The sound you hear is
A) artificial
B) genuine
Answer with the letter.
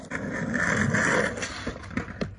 A